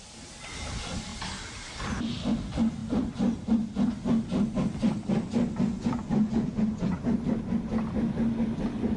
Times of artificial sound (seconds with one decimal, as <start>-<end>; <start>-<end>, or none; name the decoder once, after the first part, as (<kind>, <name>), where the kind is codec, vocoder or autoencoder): 5.7-7.1 (vocoder, Vocos)